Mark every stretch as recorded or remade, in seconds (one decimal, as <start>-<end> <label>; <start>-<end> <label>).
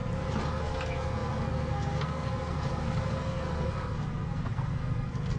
0.0-0.5 recorded; 0.5-5.4 remade